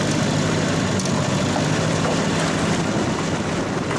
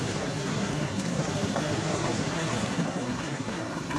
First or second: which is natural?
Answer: first